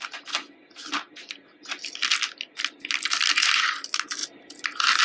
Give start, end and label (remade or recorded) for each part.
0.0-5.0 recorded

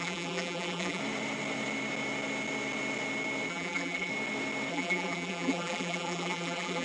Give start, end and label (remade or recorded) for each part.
0.0-1.0 remade; 1.0-3.5 recorded; 3.5-4.1 remade; 4.1-4.7 recorded; 4.7-6.8 remade

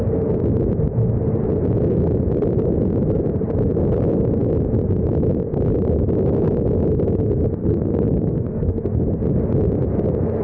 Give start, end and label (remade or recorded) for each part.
0.0-7.6 recorded; 7.6-8.9 remade; 8.9-10.4 recorded

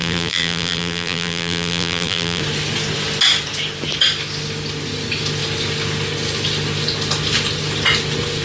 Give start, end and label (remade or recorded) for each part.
0.0-2.4 remade; 2.4-8.4 recorded

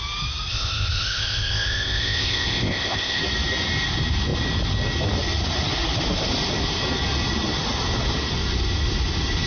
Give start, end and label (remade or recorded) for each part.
0.0-0.5 recorded; 0.5-3.2 remade; 3.2-9.5 recorded

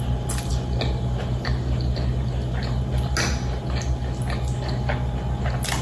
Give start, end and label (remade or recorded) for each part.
0.0-5.8 recorded

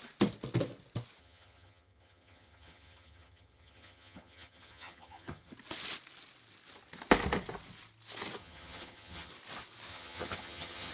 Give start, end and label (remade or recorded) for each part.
0.0-1.2 recorded; 1.2-5.5 remade; 5.5-8.4 recorded; 8.4-9.3 remade; 9.3-9.9 recorded; 9.9-10.9 remade

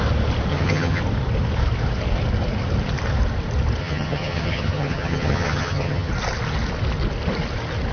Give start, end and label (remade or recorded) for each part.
0.0-0.5 recorded; 0.5-1.0 remade; 1.0-3.8 recorded; 3.8-6.1 remade; 6.1-7.9 recorded